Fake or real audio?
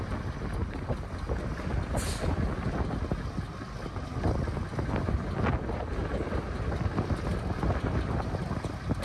real